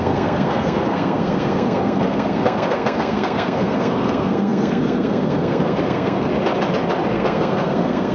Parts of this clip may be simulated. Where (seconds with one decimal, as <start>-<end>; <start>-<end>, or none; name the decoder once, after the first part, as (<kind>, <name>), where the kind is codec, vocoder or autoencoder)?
0.0-6.3 (codec, SNAC); 7.1-8.1